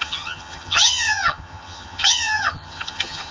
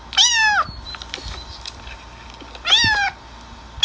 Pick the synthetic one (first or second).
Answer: first